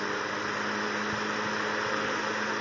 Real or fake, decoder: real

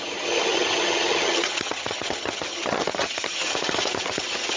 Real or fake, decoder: fake, vocoder, HiFi-GAN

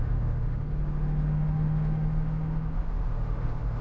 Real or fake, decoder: fake, autoencoder, DAC-VAE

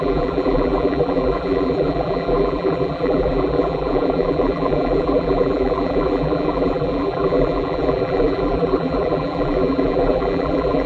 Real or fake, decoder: fake, vocoder, BigVGAN v2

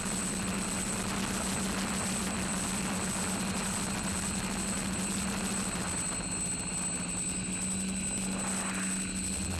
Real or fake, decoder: real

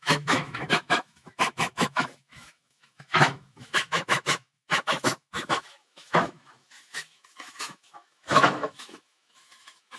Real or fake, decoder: fake, autoencoder, DAC-VAE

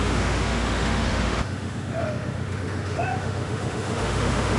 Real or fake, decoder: fake, autoencoder, DAC-VAE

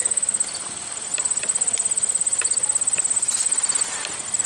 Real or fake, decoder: real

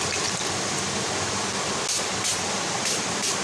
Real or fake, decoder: real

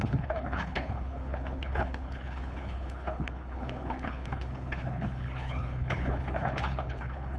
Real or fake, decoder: fake, codec, HILCodec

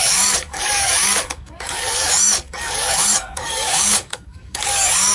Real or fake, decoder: fake, codec, DAC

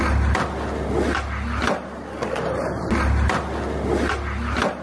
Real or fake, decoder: real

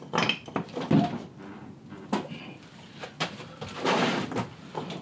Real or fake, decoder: real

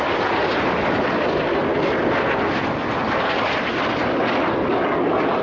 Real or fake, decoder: real